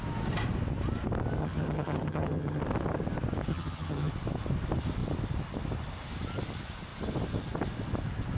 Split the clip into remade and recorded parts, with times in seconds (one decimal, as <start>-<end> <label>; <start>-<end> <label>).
0.0-1.4 recorded; 1.4-2.6 remade; 2.6-3.5 recorded; 3.5-4.1 remade; 4.1-8.4 recorded